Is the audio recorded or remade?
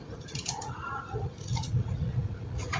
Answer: remade